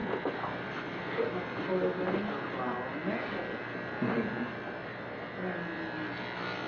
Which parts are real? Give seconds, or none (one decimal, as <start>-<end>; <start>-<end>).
0.0-6.7